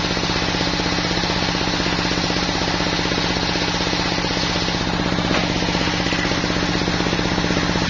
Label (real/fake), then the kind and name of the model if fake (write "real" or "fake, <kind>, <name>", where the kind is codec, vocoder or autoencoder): real